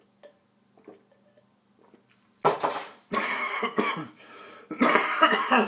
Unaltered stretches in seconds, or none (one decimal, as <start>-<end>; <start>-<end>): 0.0-3.2; 3.9-5.0